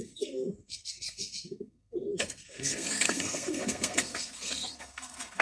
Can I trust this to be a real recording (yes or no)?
no